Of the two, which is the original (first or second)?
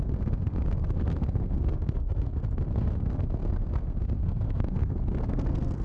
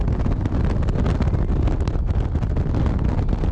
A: second